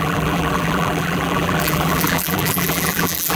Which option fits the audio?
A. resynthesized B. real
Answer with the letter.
A